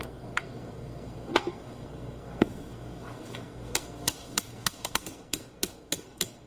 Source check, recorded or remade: remade